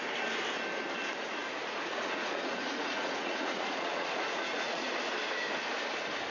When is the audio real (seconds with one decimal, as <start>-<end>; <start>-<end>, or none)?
0.0-1.4; 4.9-6.3